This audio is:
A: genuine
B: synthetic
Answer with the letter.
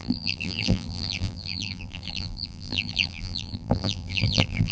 B